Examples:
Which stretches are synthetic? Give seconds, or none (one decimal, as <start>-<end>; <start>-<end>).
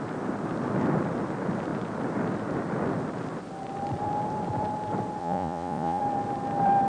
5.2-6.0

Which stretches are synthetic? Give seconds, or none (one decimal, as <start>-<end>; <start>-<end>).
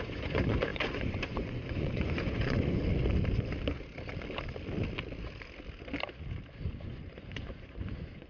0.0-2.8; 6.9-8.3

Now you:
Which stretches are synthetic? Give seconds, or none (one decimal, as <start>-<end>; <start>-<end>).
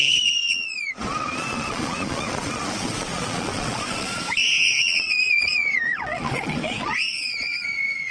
0.0-8.1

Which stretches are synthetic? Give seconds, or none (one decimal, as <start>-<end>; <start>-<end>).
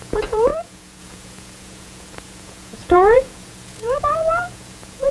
0.0-5.1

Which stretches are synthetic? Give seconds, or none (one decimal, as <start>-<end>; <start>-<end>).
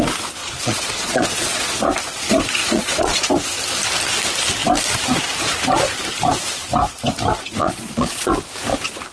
0.4-1.8; 2.6-3.3; 7.6-8.3